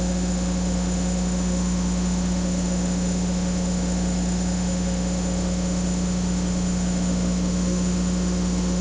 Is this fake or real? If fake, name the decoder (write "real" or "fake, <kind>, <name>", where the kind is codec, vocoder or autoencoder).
fake, autoencoder, DAC-VAE